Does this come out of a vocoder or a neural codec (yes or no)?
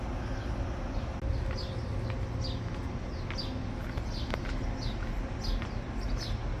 no